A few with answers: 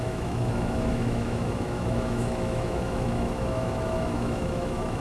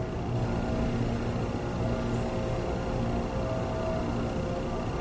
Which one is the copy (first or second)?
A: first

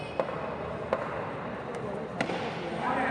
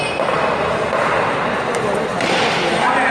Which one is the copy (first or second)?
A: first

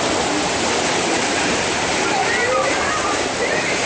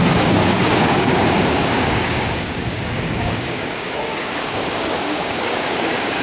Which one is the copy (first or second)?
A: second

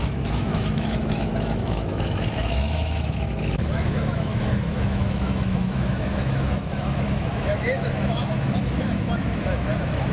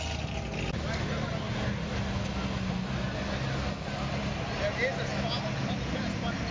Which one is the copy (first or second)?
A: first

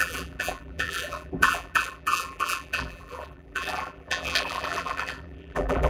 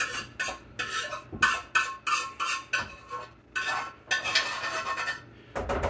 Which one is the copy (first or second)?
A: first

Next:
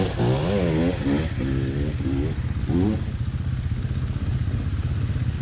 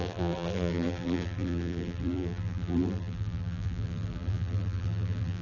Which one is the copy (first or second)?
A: second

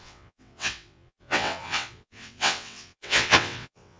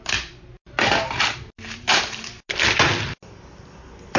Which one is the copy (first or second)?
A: first